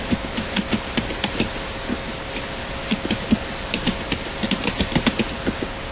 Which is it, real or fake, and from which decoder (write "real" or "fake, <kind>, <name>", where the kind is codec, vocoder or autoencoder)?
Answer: real